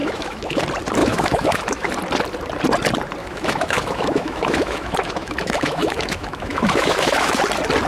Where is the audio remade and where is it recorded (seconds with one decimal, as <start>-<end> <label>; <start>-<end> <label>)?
0.0-0.6 remade; 0.6-1.0 recorded; 1.0-1.9 remade; 1.9-3.2 recorded; 3.2-7.4 remade; 7.4-7.9 recorded